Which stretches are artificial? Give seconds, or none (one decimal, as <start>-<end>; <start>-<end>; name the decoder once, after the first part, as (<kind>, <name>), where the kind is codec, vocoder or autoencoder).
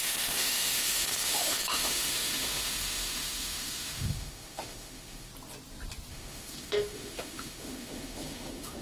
0.0-5.3 (autoencoder, DAC-VAE); 6.1-8.8